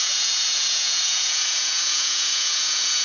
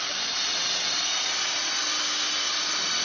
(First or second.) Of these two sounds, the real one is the second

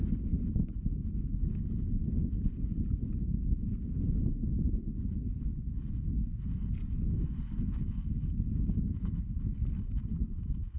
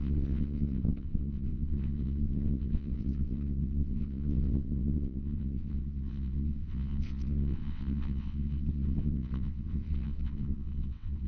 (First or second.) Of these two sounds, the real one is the first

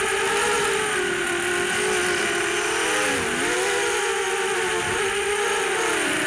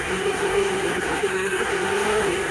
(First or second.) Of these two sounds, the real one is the first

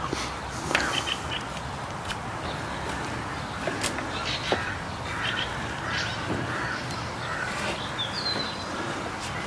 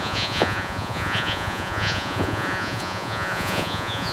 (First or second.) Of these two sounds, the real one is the first